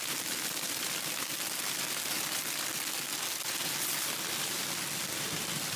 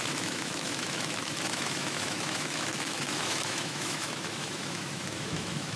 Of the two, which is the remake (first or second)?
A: second